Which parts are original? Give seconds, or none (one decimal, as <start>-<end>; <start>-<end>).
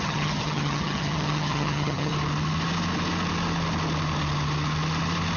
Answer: 2.1-5.4